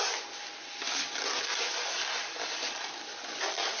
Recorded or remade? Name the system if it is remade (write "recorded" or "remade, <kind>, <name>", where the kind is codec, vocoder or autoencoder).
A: recorded